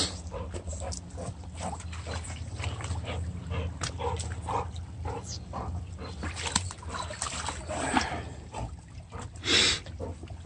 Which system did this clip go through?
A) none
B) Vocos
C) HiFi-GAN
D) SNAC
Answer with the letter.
A